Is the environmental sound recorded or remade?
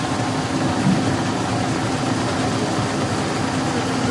recorded